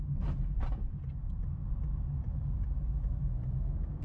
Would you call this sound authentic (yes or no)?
yes